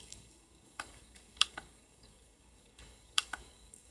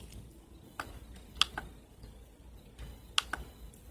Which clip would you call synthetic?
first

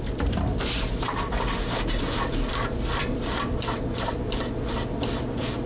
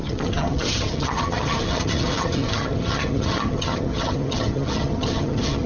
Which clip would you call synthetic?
second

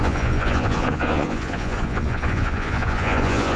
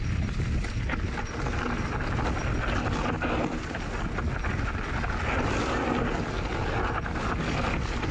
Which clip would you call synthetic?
first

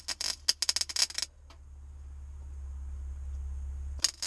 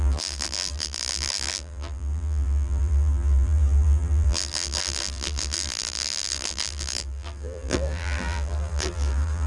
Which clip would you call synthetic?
second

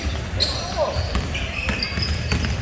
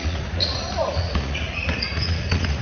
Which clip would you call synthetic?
second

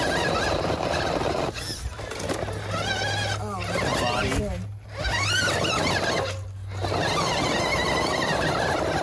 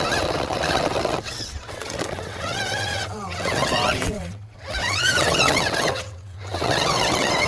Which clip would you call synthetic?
second